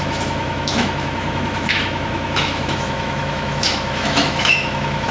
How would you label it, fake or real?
fake